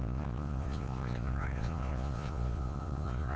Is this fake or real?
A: fake